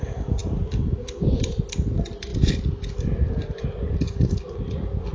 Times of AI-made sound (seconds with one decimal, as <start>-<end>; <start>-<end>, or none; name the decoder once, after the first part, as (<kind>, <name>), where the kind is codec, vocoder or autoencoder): none